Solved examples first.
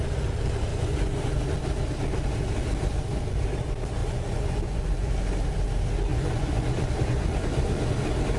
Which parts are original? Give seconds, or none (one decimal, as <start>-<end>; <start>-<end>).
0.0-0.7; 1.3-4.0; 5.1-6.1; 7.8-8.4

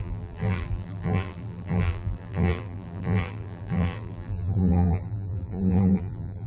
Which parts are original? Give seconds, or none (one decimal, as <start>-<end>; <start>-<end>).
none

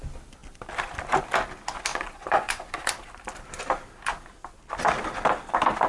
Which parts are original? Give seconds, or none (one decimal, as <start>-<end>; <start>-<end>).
0.0-1.9; 2.7-5.9

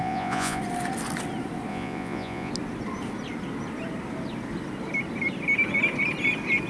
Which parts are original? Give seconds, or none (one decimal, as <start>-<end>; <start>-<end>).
0.6-1.7; 2.5-6.7